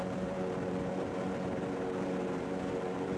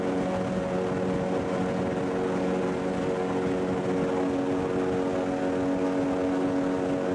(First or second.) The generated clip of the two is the first